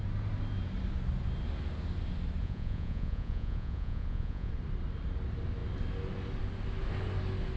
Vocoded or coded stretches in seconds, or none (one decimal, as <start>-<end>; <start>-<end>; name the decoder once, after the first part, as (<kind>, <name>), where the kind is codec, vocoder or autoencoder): 2.4-4.5 (vocoder, Vocos)